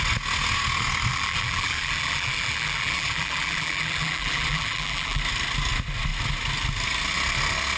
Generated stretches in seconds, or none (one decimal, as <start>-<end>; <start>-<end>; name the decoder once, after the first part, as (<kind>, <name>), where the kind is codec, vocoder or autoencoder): 1.1-5.2 (vocoder, BigVGAN v2)